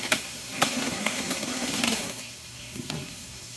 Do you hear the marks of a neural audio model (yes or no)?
yes